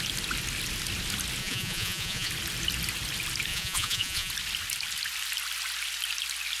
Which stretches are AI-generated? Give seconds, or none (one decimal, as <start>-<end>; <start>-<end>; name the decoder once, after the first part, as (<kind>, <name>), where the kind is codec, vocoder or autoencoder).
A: 1.4-2.3 (vocoder, Vocos); 3.5-4.3